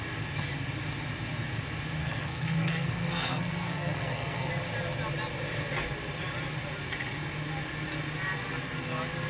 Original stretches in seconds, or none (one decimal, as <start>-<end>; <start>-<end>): 0.0-2.0; 4.5-9.3